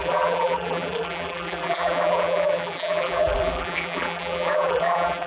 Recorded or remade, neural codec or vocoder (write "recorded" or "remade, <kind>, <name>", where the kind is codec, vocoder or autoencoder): remade, vocoder, BigVGAN v2